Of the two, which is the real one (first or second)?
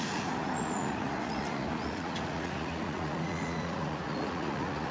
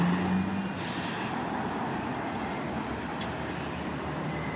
second